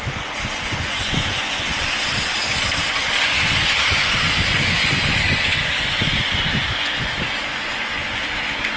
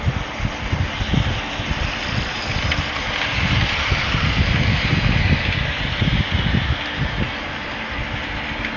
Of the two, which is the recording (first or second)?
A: second